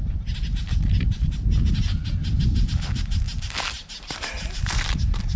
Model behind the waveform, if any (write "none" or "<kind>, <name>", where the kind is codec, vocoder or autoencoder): none